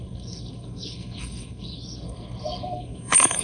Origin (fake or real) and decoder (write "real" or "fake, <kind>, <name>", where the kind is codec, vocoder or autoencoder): fake, codec, SNAC